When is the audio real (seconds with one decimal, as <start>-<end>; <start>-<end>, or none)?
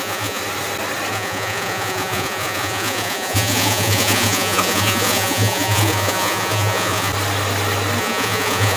0.4-1.1; 7.1-8.0